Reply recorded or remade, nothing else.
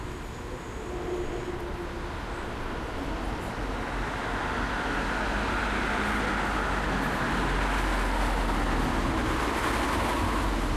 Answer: recorded